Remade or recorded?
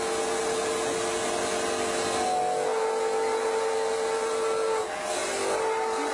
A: recorded